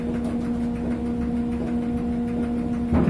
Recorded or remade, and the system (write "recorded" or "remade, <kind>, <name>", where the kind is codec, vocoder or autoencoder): recorded